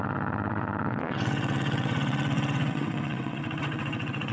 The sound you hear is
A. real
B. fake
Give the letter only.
B